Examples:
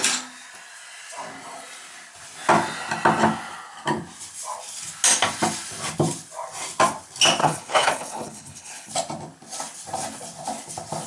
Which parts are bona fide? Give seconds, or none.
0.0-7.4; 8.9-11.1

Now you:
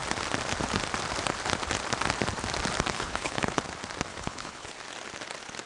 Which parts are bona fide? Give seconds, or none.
0.0-2.9; 3.6-4.1; 4.7-5.7